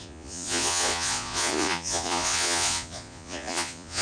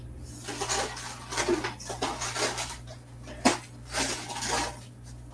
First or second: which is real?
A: second